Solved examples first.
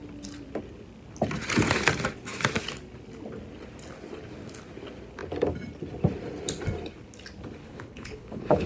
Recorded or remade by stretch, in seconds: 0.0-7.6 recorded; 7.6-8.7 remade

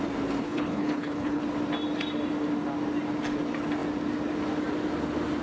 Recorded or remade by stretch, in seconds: 0.0-0.4 recorded; 0.4-1.4 remade; 1.4-5.4 recorded